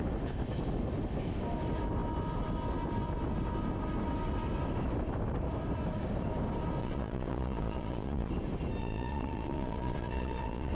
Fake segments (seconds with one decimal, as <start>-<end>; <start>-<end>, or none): 6.8-8.3; 8.8-10.7